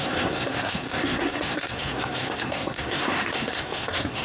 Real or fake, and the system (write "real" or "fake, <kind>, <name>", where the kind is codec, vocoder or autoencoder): fake, codec, SNAC